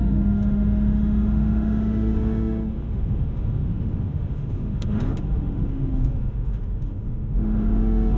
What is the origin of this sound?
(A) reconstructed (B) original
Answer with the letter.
A